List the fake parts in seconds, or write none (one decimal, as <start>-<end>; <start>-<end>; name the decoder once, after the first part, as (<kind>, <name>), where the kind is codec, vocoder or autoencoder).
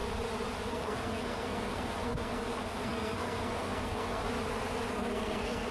0.7-4.2 (codec, SNAC); 4.9-5.7